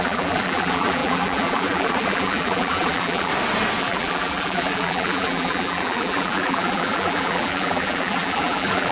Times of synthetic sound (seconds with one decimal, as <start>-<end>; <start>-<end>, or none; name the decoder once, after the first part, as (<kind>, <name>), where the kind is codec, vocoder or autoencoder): 0.0-3.3 (vocoder, BigVGAN v2); 3.8-8.9